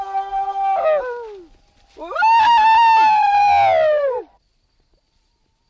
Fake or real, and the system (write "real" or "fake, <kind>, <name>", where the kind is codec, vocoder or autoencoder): real